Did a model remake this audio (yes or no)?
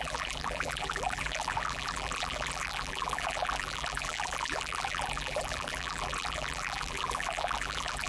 yes